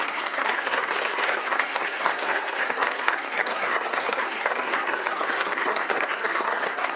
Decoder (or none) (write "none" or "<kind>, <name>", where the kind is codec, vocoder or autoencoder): codec, SNAC